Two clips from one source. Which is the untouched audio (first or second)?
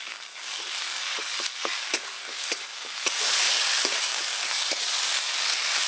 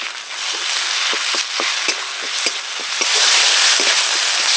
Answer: second